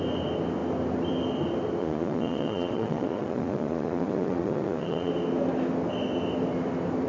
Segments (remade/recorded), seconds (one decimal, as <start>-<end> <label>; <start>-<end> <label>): 0.0-1.8 recorded; 1.8-5.1 remade; 5.1-7.1 recorded